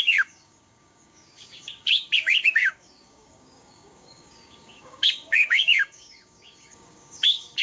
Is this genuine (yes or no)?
no